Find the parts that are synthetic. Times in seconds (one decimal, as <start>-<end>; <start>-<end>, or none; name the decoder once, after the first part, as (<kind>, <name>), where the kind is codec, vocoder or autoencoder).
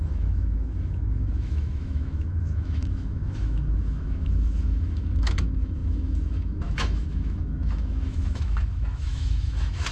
0.0-9.9 (autoencoder, DAC-VAE)